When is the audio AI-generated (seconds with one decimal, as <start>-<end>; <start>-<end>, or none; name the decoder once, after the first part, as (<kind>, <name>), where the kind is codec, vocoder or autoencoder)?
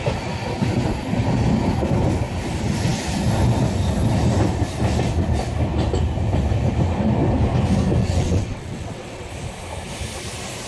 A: 8.0-9.3 (vocoder, WaveNeXt)